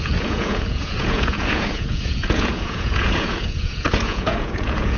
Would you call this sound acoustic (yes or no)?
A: no